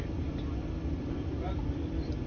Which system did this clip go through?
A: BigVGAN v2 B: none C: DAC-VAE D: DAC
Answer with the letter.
B